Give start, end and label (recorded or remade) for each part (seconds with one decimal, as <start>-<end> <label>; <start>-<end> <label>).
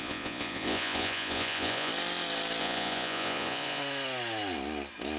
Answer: 0.0-1.9 remade; 1.9-2.6 recorded; 2.6-3.8 remade; 3.8-5.2 recorded